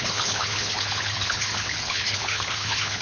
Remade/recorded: remade